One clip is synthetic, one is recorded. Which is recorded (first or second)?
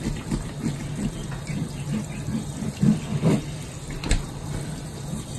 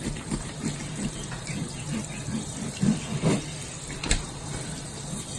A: first